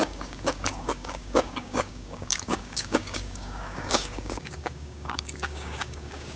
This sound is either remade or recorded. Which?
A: remade